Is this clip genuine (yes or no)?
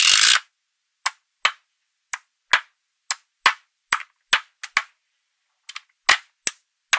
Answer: yes